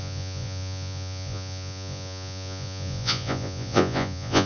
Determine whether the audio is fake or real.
fake